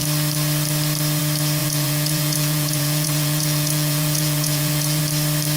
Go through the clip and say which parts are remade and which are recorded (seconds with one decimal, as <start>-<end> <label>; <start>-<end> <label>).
0.0-1.6 recorded; 1.6-5.0 remade; 5.0-5.6 recorded